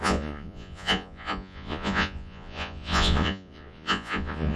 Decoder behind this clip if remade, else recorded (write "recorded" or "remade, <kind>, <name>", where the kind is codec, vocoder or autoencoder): remade, vocoder, Vocos